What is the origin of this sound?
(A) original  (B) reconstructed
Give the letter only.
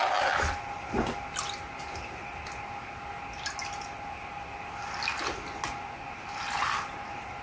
A